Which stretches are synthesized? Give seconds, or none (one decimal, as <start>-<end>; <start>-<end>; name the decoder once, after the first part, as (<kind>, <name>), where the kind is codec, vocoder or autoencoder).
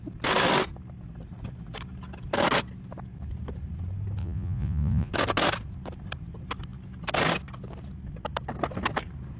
4.2-5.1 (vocoder, Vocos)